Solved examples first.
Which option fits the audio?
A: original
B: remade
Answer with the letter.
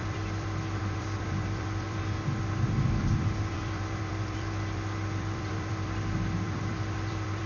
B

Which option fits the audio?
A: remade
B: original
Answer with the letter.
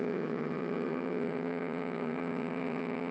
A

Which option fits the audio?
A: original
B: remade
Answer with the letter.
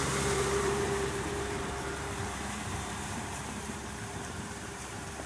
B